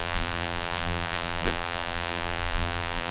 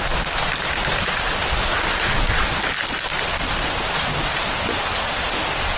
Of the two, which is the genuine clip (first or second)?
second